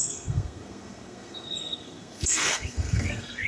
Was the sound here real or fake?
fake